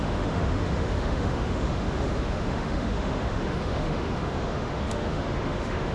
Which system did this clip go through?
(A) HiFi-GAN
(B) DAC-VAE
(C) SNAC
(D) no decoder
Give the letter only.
B